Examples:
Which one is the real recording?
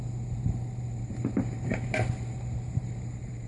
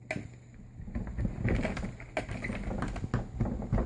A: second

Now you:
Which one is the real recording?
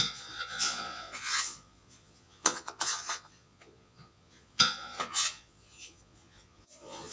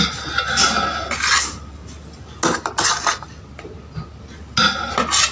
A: second